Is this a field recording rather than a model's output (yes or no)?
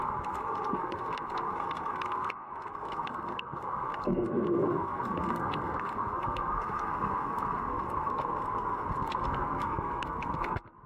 no